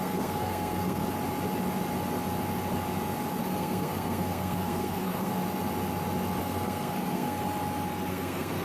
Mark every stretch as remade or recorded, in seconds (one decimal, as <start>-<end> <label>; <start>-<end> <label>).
0.0-1.0 remade; 1.0-3.4 recorded; 3.4-5.3 remade; 5.3-6.4 recorded; 6.4-7.4 remade; 7.4-8.1 recorded; 8.1-8.6 remade